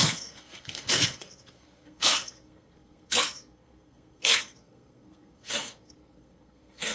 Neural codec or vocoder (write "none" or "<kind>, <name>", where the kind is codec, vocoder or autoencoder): codec, SNAC